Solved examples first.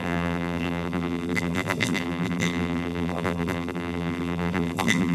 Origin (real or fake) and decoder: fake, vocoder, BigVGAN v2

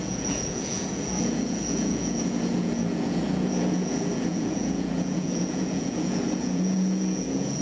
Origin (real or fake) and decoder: fake, vocoder, Vocos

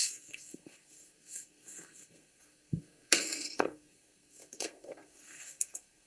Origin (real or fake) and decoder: fake, codec, SNAC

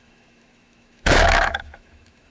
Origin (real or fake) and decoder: fake, autoencoder, DAC-VAE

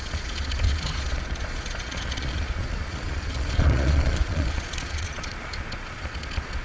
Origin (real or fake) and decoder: fake, vocoder, Vocos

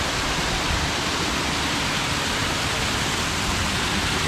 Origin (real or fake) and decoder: real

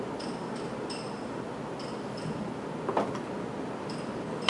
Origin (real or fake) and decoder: real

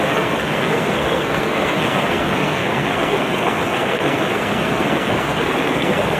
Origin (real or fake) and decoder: fake, codec, SNAC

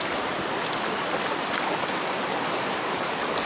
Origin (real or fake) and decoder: fake, vocoder, BigVGAN v2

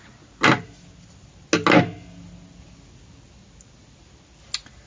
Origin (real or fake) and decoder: real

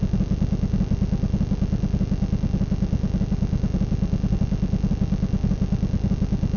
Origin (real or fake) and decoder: real